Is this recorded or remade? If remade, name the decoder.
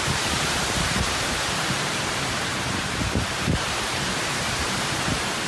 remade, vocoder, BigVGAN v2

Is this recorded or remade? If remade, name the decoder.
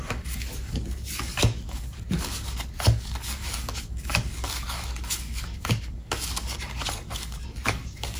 remade, codec, DAC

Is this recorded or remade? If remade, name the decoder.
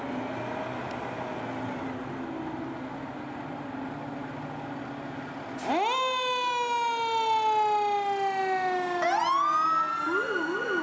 recorded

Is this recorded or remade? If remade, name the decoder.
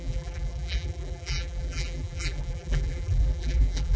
remade, vocoder, BigVGAN v2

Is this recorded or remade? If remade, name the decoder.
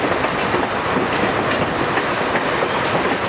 recorded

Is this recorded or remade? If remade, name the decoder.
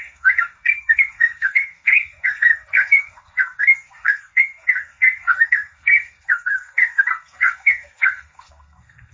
remade, codec, SNAC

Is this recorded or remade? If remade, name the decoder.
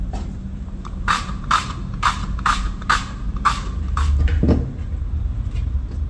remade, vocoder, BigVGAN v2